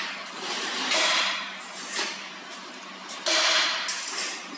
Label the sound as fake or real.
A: fake